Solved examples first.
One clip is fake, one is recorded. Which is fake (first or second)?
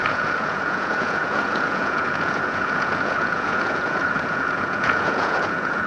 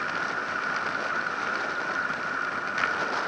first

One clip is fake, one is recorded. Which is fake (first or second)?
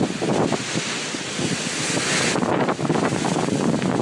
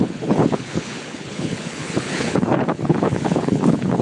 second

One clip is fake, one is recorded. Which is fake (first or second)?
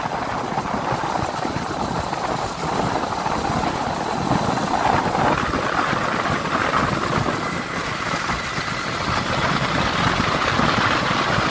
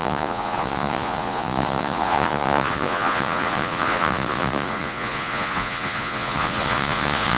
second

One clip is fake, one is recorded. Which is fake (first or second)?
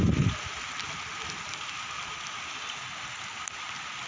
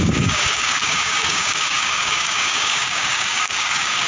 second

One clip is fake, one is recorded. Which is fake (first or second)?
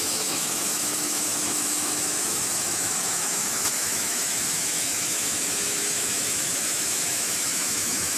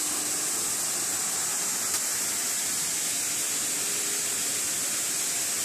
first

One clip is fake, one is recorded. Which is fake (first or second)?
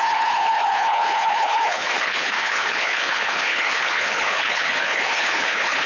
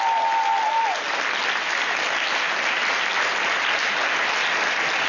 first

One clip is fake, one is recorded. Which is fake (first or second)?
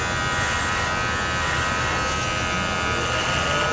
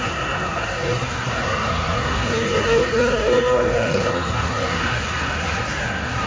second